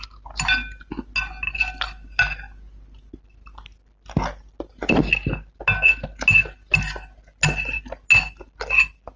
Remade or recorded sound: recorded